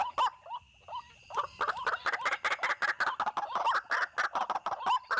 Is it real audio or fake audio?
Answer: real